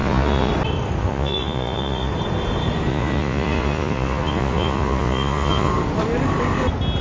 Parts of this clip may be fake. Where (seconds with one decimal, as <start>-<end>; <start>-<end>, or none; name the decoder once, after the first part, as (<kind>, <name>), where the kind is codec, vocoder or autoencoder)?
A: 0.0-0.5 (vocoder, Vocos); 1.0-2.1; 2.9-5.7